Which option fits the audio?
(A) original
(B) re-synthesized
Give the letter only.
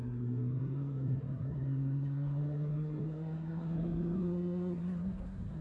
B